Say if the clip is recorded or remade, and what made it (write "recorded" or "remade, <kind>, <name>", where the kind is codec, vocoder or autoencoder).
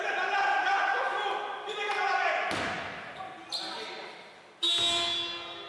recorded